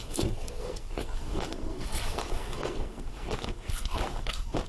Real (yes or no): no